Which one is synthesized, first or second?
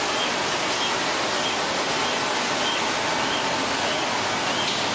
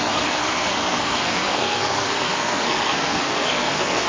second